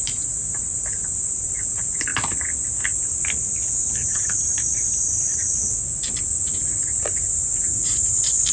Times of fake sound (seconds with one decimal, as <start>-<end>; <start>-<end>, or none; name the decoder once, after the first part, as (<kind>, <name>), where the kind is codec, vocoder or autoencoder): 0.0-2.1 (vocoder, BigVGAN v2); 6.2-8.5